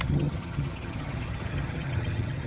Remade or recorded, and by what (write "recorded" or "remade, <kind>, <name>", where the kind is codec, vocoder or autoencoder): remade, vocoder, HiFi-GAN